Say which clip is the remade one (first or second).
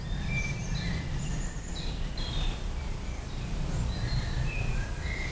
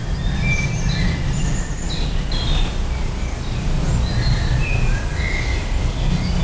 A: first